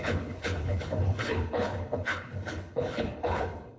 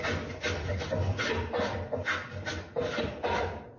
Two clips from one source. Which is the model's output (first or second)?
first